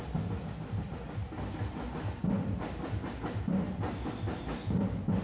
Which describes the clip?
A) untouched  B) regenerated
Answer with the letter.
A